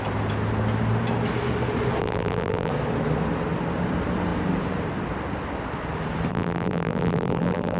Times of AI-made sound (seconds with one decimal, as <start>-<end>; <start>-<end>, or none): 2.0-2.7; 6.3-7.8